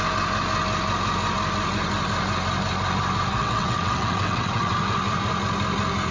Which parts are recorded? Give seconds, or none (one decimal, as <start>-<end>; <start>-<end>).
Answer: 0.0-3.3; 4.7-6.1